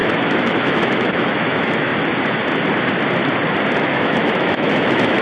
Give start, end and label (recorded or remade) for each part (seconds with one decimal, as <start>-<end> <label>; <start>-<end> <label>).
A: 0.0-1.9 remade; 1.9-3.8 recorded; 3.8-5.2 remade